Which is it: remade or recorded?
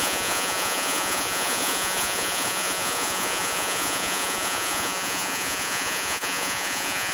remade